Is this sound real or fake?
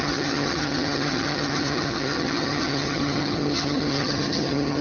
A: fake